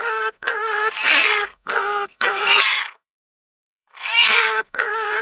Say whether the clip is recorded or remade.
remade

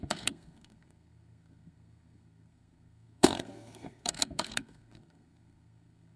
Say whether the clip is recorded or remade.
remade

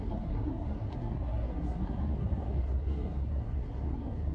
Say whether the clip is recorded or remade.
remade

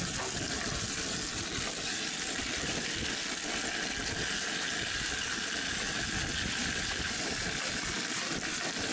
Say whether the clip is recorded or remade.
recorded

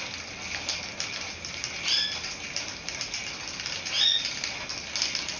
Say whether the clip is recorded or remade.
recorded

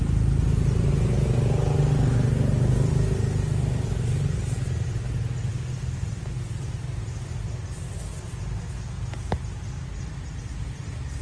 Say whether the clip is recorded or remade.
recorded